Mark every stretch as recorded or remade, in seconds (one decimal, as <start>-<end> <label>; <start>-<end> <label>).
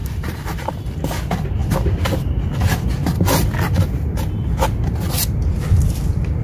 0.0-0.7 remade; 0.7-6.4 recorded